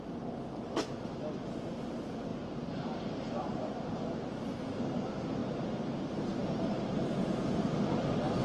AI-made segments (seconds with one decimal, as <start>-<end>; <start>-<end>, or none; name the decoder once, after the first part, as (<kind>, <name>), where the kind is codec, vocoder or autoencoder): 2.3-3.6 (vocoder, BigVGAN v2); 5.4-6.0; 6.4-7.8